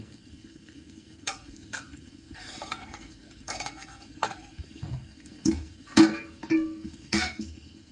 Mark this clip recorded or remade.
remade